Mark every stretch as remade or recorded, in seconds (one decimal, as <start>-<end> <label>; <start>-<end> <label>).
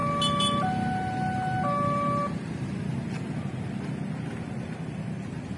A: 0.0-5.6 recorded